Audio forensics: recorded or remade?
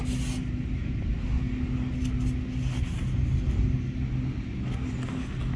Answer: recorded